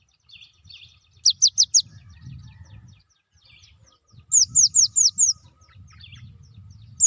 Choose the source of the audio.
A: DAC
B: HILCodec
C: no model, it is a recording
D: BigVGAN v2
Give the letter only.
C